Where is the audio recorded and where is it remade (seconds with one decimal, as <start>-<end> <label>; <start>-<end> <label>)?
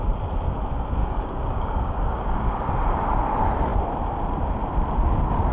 0.0-1.0 recorded; 1.0-2.7 remade; 2.7-5.5 recorded